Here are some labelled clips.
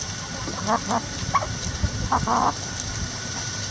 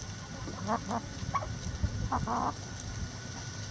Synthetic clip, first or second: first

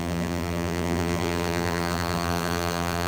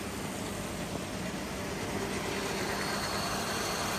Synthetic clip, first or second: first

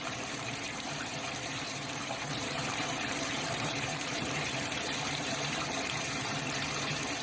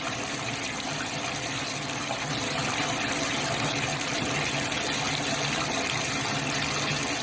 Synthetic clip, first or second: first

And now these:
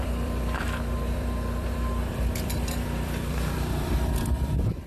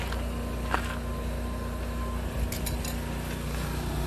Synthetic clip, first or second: first